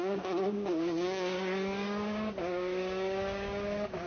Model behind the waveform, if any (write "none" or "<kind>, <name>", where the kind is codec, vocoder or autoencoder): codec, DAC